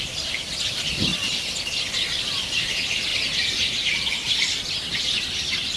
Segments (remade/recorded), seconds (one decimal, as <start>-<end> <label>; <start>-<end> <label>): 0.0-5.8 remade